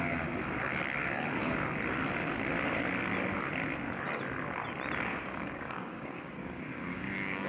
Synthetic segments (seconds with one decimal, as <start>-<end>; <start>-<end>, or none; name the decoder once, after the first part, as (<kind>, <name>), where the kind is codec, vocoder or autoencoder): 5.1-7.5 (codec, DAC)

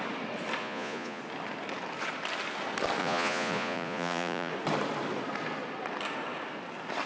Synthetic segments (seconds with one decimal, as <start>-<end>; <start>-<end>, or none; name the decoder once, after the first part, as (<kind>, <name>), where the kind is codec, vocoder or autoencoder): 0.6-1.2 (vocoder, Vocos); 3.0-4.5